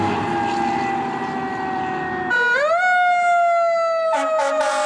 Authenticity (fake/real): real